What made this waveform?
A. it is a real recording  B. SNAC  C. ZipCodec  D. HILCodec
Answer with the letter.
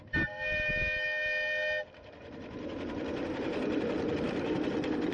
A